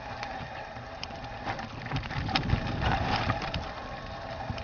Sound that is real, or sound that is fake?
real